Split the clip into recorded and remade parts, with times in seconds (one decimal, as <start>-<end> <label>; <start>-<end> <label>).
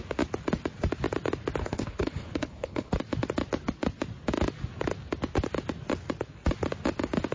0.0-1.6 recorded; 1.6-2.9 remade; 2.9-7.3 recorded